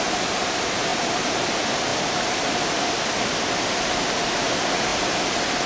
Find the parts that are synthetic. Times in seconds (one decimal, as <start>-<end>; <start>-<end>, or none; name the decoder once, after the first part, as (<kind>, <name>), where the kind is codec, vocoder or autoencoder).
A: none